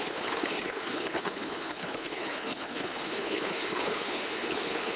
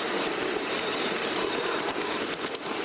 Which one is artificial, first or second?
first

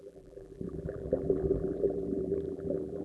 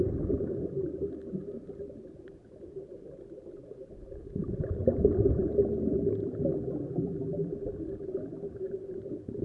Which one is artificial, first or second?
first